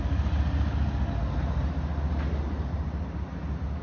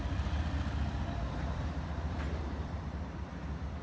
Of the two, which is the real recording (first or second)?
first